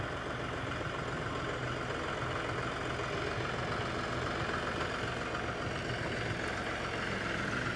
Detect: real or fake real